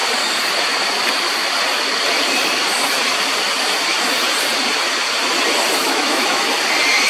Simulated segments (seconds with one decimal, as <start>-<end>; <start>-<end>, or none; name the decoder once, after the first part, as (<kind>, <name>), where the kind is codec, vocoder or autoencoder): 5.8-6.5 (autoencoder, DAC-VAE)